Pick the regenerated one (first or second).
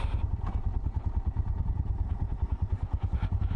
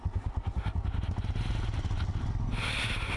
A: first